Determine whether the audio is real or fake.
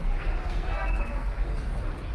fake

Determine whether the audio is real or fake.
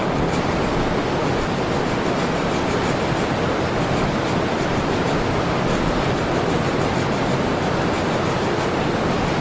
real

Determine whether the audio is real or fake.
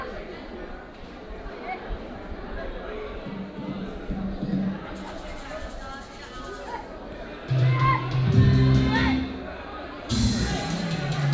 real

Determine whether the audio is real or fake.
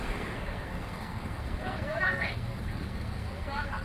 fake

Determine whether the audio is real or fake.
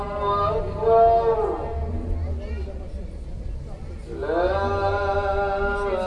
real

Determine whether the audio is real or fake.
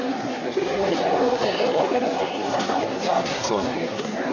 fake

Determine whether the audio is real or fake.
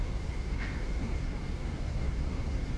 fake